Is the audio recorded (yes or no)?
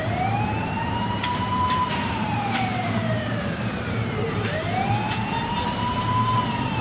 no